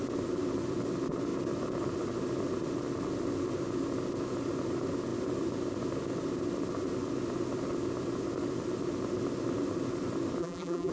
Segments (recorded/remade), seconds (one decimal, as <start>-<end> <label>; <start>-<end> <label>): 0.0-10.4 recorded; 10.4-10.9 remade